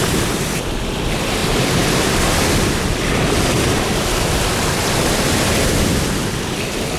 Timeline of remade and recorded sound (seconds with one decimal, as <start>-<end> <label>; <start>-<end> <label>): 0.0-7.0 recorded